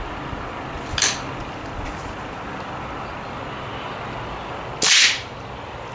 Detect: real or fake real